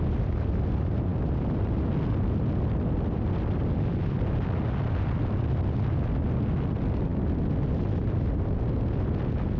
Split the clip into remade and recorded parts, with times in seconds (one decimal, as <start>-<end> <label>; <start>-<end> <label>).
0.0-9.6 recorded